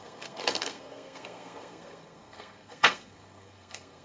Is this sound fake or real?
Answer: fake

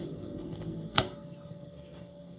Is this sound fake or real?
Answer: fake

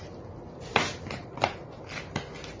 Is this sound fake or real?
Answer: real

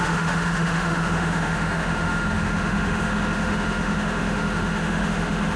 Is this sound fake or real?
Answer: fake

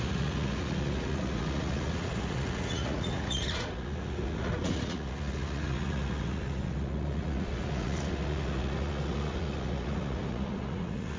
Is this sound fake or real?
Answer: fake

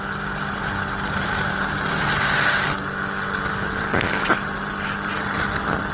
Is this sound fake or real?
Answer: real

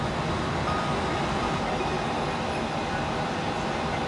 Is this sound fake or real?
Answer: real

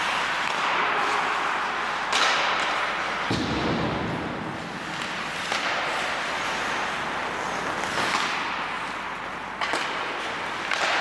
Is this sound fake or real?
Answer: real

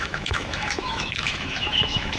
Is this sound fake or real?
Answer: fake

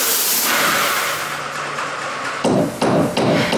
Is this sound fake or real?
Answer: real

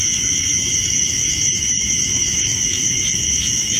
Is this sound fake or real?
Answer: fake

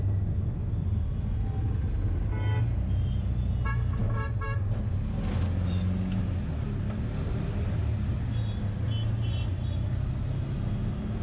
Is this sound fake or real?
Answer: real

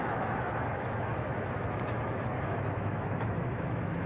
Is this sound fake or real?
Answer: fake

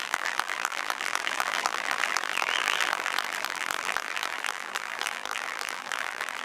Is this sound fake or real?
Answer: fake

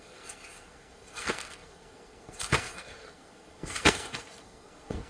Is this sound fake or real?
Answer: fake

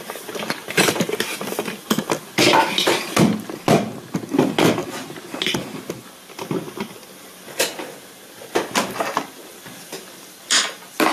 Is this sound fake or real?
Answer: real